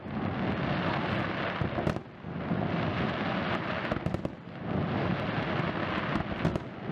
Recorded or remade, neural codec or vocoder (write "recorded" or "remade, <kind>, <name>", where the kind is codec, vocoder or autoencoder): recorded